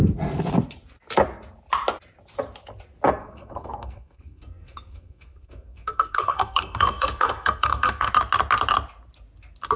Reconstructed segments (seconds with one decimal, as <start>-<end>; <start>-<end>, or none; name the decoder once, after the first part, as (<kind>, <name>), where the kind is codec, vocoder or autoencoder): 3.2-8.1 (codec, SNAC)